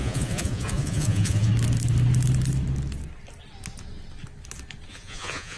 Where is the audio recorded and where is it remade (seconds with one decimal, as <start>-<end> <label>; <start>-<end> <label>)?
0.0-1.5 remade; 1.5-4.9 recorded; 4.9-5.6 remade